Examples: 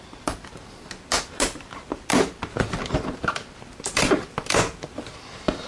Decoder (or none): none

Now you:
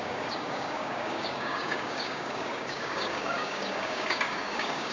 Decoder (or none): codec, DAC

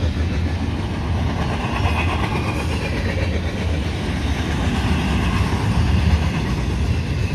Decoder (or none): none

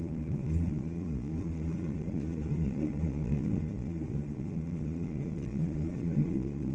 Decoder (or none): vocoder, Vocos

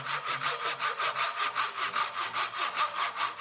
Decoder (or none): none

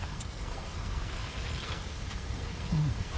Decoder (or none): codec, SNAC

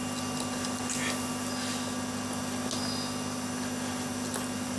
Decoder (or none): none